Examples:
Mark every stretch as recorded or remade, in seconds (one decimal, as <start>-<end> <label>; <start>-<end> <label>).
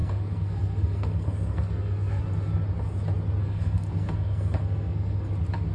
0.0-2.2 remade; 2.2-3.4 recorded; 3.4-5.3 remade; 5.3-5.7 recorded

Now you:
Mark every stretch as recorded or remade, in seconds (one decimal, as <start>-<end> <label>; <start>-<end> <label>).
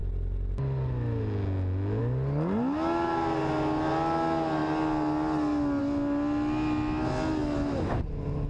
0.0-8.5 recorded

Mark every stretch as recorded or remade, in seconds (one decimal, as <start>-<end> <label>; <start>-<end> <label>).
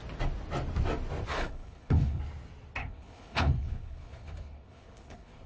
0.0-1.3 recorded; 1.3-2.2 remade; 2.2-2.8 recorded; 2.8-5.5 remade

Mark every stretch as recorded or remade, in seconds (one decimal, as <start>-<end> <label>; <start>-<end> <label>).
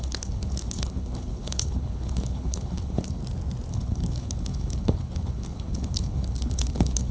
0.0-3.2 remade; 3.2-3.7 recorded; 3.7-7.1 remade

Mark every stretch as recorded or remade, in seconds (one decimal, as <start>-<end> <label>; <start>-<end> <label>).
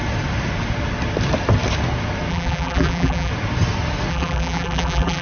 0.0-2.3 recorded; 2.3-3.3 remade; 3.3-4.1 recorded; 4.1-5.2 remade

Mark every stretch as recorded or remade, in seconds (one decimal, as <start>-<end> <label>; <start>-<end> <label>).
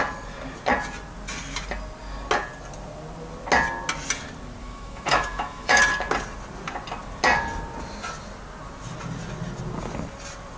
0.0-4.6 recorded; 4.6-5.8 remade; 5.8-10.6 recorded